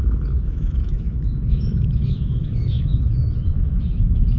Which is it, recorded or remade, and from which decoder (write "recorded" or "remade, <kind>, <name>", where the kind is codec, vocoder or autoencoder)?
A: remade, autoencoder, DAC-VAE